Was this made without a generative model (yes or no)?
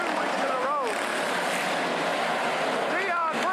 yes